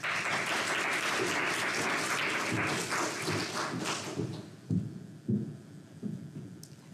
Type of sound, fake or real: real